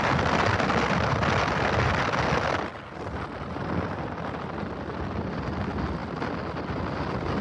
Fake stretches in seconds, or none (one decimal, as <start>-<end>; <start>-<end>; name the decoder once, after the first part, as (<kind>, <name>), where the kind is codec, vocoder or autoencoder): none

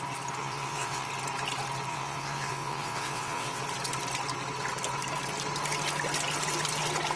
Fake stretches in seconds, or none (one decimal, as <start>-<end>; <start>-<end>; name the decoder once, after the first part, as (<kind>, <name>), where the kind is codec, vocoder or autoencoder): 0.4-1.1 (vocoder, WaveNeXt); 1.9-3.6